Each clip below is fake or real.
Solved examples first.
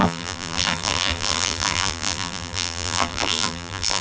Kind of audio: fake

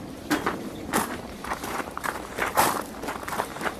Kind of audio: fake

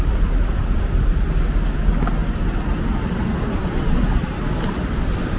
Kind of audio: real